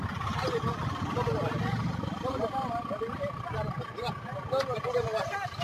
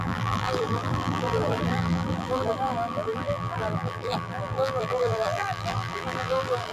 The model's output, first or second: second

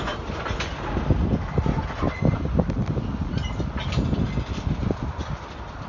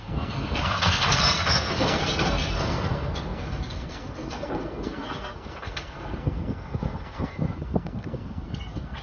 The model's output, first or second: second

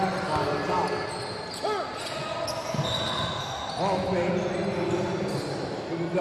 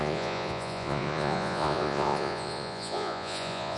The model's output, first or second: second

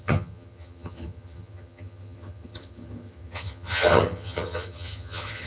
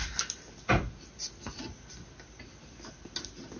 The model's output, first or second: first